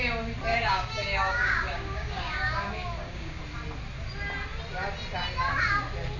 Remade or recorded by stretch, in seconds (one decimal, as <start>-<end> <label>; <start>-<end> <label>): 0.0-0.5 recorded; 0.5-3.4 remade; 3.4-6.2 recorded